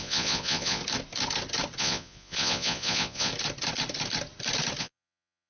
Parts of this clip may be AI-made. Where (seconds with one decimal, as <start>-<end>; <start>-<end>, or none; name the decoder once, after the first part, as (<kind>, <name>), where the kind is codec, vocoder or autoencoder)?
0.0-0.8 (vocoder, Vocos); 1.8-3.3; 4.8-5.5